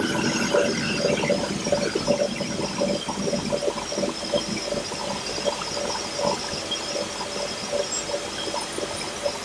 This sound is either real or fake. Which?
real